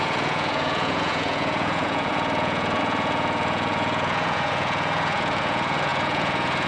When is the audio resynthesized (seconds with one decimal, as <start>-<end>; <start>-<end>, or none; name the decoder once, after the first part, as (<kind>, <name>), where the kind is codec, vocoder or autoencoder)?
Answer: 0.0-6.7 (vocoder, Vocos)